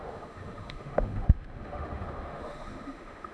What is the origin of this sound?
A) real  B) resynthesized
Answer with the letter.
B